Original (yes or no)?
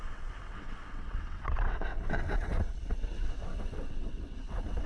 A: no